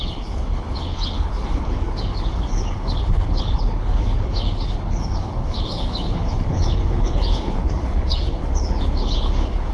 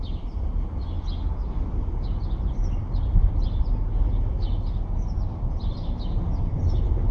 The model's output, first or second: first